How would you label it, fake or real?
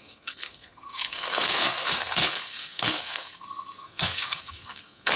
fake